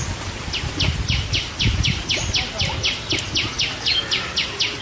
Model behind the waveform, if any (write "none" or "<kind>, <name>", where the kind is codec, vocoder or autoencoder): none